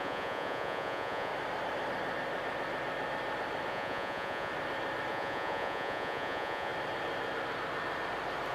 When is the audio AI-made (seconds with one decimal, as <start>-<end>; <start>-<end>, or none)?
0.0-1.3; 3.7-4.5; 5.1-6.7